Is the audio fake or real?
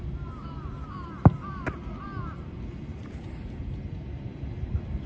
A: real